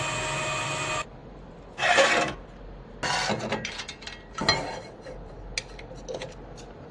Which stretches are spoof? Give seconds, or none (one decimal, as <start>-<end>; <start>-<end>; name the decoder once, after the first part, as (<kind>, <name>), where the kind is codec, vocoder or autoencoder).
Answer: none